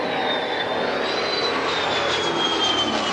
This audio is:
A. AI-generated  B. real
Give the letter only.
B